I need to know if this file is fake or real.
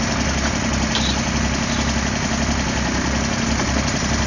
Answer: real